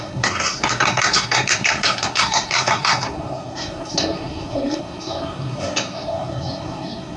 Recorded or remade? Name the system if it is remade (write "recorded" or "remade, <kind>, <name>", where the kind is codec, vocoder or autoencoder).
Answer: remade, codec, SNAC